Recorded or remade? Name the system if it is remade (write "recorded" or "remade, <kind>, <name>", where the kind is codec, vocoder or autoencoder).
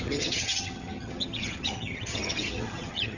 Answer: remade, vocoder, HiFi-GAN